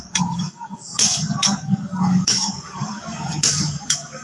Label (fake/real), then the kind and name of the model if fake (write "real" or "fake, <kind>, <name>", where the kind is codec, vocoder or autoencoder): fake, codec, DAC